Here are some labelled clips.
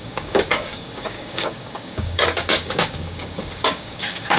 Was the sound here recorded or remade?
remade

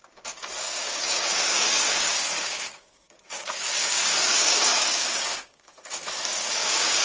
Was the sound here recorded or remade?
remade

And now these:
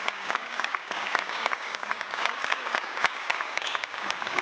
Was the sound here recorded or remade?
remade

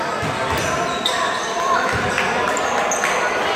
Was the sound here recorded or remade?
recorded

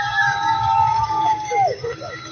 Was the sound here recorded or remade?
remade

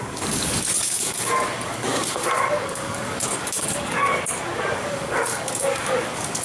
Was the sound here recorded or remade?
remade